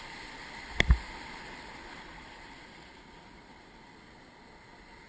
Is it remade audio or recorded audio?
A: recorded